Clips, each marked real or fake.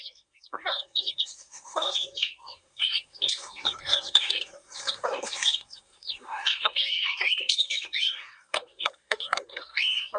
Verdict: fake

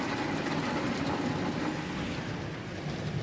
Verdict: real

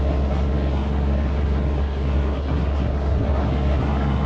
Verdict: fake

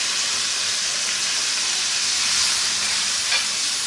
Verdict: real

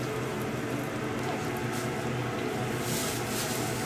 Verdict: real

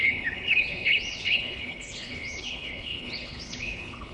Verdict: fake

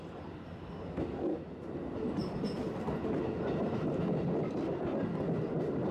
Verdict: real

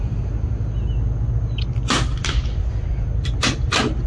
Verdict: real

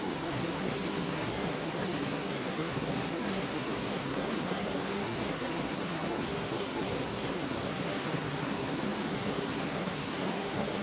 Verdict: fake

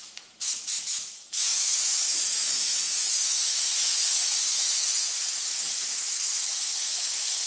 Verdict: fake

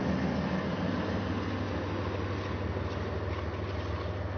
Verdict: real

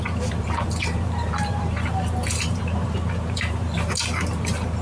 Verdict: fake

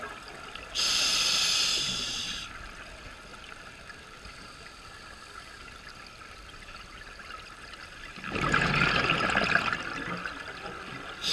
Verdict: real